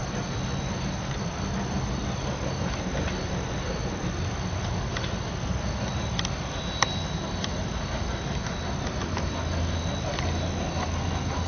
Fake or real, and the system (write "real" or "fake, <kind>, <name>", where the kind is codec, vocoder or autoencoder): real